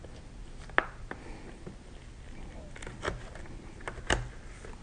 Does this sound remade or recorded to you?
recorded